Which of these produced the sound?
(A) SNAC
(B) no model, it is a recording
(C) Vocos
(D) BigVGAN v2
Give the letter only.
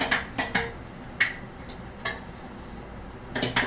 B